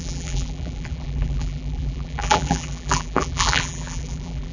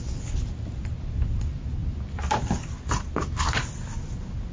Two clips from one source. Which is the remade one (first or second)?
first